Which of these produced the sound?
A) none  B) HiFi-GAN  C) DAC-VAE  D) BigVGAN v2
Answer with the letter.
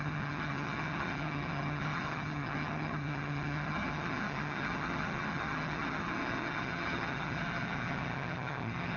B